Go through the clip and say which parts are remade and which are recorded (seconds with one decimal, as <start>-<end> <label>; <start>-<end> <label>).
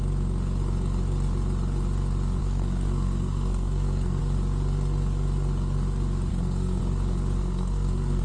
0.0-2.4 recorded; 2.4-4.2 remade; 4.2-6.3 recorded; 6.3-6.8 remade; 6.8-7.4 recorded; 7.4-8.2 remade